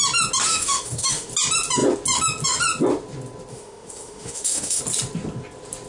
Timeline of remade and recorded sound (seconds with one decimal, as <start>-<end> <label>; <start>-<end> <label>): 0.0-0.5 recorded; 0.5-1.3 remade; 1.3-3.5 recorded; 3.5-4.8 remade; 4.8-5.9 recorded